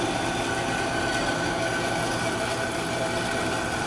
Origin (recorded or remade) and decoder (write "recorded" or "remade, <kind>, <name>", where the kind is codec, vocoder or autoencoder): recorded